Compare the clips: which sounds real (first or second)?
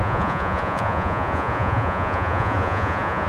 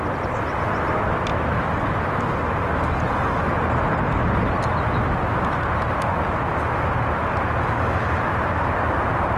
second